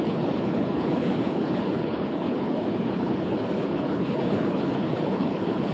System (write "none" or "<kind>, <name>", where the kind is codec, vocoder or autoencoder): codec, HILCodec